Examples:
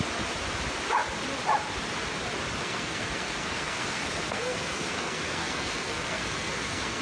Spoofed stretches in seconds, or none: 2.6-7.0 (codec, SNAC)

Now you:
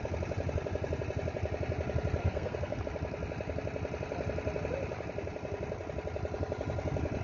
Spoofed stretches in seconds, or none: 2.2-2.8 (codec, SNAC)

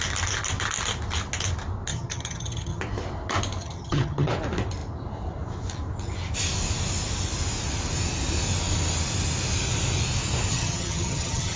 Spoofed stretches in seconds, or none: 1.9-2.8 (vocoder, HiFi-GAN); 3.6-4.3; 10.5-11.6

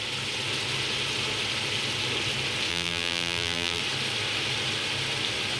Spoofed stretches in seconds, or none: 2.7-3.8 (vocoder, BigVGAN v2)